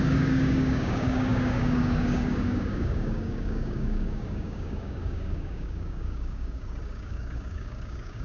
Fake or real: fake